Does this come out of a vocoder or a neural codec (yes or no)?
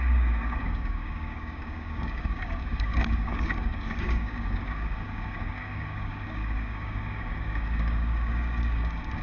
yes